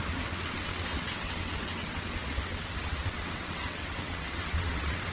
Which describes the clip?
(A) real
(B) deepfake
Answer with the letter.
B